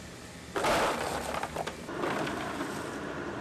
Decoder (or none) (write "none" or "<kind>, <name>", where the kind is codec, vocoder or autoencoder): none